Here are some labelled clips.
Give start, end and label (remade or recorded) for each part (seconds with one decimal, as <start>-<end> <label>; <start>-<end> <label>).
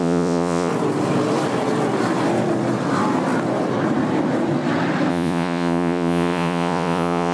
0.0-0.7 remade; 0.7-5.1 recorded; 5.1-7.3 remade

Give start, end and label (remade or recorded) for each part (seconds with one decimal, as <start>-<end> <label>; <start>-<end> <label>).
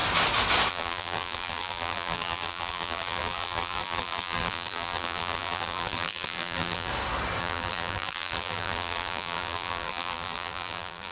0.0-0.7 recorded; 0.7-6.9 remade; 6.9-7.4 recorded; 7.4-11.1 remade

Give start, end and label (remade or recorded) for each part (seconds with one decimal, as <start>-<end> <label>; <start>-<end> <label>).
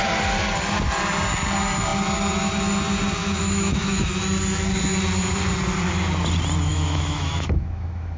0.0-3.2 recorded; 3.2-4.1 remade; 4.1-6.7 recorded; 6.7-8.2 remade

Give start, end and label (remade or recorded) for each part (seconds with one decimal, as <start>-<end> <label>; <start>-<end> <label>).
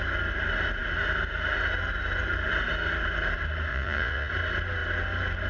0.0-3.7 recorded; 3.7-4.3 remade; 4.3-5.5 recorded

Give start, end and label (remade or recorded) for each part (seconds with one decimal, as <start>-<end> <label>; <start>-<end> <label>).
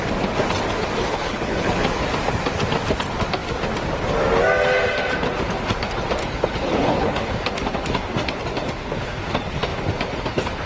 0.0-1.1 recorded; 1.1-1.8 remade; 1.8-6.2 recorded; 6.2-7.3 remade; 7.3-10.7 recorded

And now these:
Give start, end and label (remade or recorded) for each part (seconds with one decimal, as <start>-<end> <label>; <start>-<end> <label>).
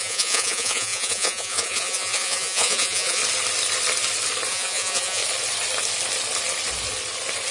0.0-3.2 remade; 3.2-4.5 recorded; 4.5-5.2 remade; 5.2-7.5 recorded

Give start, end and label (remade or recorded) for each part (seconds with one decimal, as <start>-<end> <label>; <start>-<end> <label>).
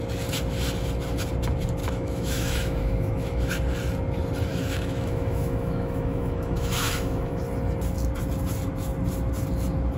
0.0-1.8 recorded; 1.8-3.5 remade; 3.5-4.5 recorded; 4.5-7.4 remade; 7.4-10.0 recorded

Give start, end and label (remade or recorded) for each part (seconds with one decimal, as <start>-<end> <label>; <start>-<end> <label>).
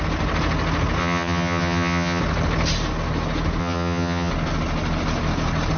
0.0-1.0 recorded; 1.0-2.2 remade; 2.2-3.6 recorded; 3.6-4.3 remade; 4.3-5.8 recorded